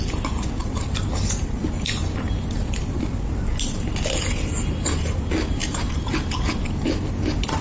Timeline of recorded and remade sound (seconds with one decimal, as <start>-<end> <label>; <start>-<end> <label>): 0.0-0.6 recorded; 0.6-3.0 remade; 3.0-5.6 recorded; 5.6-6.1 remade; 6.1-7.6 recorded